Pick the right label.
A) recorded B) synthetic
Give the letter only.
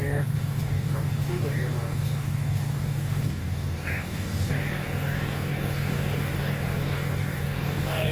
B